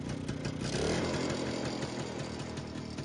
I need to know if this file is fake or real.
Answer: real